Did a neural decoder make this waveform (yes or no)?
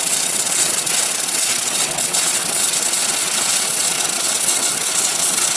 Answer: yes